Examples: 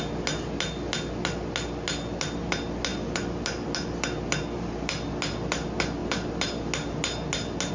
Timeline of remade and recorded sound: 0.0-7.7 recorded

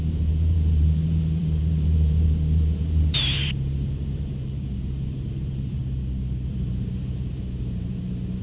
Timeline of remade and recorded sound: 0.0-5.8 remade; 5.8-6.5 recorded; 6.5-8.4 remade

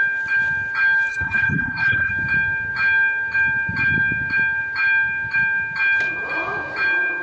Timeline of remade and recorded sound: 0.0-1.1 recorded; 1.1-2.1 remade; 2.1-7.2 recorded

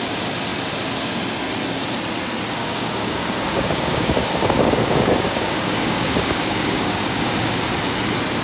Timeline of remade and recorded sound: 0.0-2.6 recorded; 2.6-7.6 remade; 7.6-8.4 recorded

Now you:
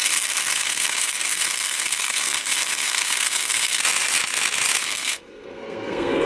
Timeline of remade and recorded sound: 0.0-3.8 remade; 3.8-4.8 recorded; 4.8-6.3 remade